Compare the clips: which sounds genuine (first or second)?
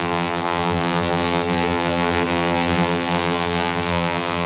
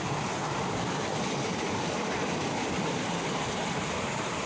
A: second